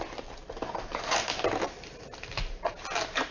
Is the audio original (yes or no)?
yes